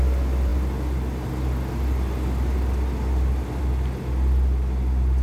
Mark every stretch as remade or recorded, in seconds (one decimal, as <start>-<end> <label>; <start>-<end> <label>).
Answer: 0.0-5.2 recorded